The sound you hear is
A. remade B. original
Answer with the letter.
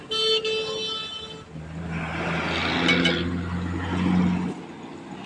B